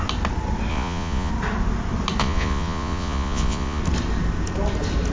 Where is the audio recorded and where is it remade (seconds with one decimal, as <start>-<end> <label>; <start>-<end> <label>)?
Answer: 0.0-0.7 recorded; 0.7-1.3 remade; 1.3-2.2 recorded; 2.2-3.8 remade; 3.8-5.1 recorded